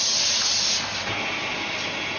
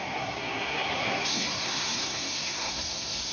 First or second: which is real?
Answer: first